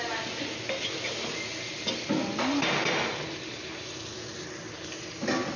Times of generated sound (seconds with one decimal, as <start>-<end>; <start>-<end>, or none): none